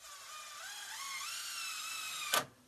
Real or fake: real